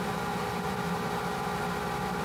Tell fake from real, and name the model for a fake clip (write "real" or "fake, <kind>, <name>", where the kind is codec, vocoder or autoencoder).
fake, vocoder, BigVGAN v2